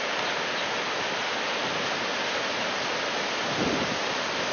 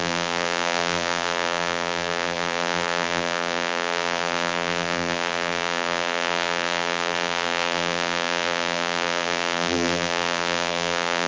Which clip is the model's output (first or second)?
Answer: second